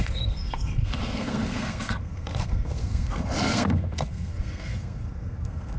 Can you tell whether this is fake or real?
fake